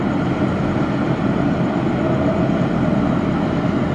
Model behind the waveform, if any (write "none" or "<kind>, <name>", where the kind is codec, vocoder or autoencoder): none